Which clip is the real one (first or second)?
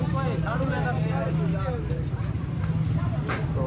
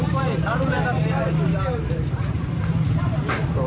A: first